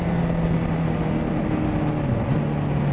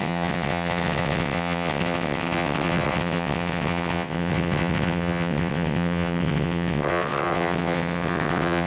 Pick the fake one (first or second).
second